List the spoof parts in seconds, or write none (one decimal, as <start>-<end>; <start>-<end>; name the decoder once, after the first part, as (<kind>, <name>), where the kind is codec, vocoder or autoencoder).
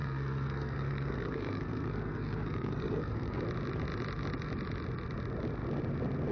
0.0-3.4 (codec, SNAC)